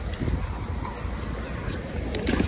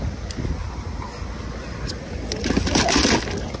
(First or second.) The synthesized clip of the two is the first